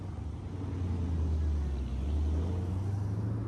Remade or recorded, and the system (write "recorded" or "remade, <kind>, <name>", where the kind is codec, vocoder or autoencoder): recorded